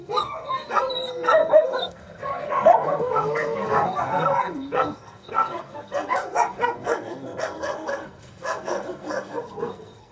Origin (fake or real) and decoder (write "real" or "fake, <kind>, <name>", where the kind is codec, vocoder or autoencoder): fake, codec, SNAC